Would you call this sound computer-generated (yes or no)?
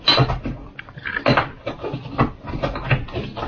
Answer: no